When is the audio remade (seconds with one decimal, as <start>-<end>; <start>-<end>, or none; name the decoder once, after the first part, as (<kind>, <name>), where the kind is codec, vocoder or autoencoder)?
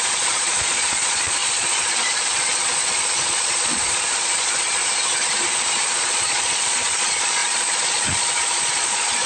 0.0-4.8 (vocoder, Vocos); 6.0-9.3